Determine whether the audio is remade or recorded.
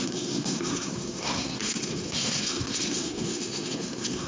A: remade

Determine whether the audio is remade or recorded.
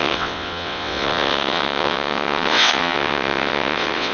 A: remade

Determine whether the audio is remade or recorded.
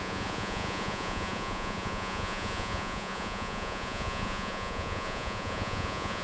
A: remade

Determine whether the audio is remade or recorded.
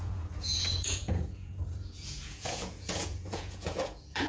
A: remade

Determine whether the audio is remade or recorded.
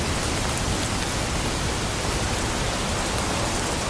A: recorded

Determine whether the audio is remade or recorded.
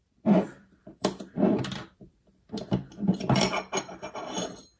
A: remade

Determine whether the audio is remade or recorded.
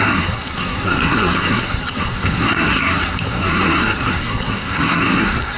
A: remade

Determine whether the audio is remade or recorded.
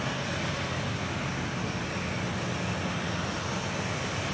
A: recorded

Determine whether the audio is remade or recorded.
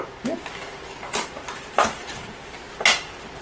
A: recorded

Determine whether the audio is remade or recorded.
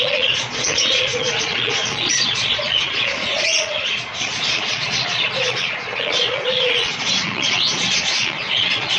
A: remade